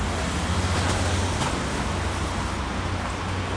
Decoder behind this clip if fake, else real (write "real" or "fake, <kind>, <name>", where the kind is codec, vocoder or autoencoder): real